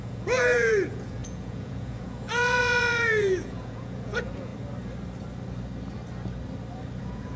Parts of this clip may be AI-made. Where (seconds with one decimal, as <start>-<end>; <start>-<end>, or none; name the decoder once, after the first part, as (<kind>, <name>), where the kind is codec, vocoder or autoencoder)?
0.0-4.5 (vocoder, Vocos); 7.0-7.4